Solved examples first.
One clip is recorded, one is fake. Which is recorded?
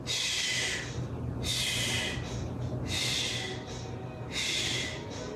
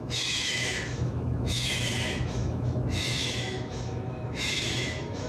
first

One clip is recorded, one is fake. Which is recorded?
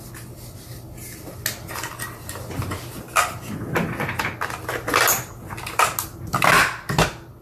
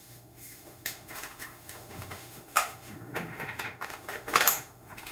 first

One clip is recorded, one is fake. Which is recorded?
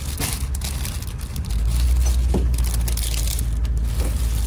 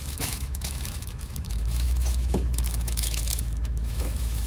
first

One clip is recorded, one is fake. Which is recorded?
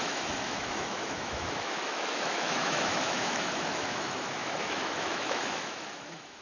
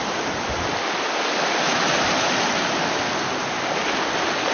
second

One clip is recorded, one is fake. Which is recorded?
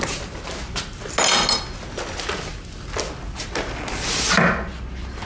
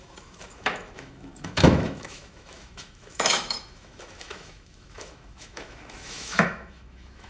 first